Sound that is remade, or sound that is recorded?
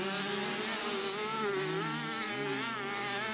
recorded